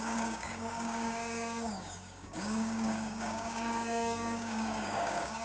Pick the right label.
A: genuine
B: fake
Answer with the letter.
B